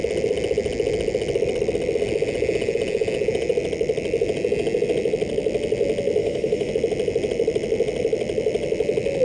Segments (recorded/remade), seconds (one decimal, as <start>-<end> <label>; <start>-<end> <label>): 0.0-6.2 recorded; 6.2-6.7 remade; 6.7-9.2 recorded